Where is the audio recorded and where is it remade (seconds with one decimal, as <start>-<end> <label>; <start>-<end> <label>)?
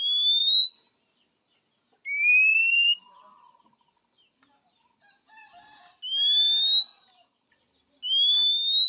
0.0-0.4 recorded; 0.4-1.0 remade; 1.0-2.5 recorded; 2.5-3.6 remade; 3.6-6.9 recorded; 6.9-7.5 remade; 7.5-8.9 recorded